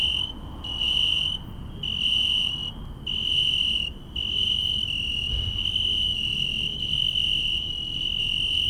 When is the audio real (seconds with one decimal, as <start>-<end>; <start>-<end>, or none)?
0.0-2.6; 4.9-6.3; 8.2-8.7

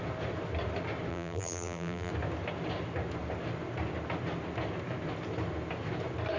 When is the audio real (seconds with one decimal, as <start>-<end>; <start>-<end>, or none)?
0.0-1.1; 2.1-6.4